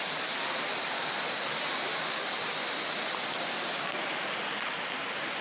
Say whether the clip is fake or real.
real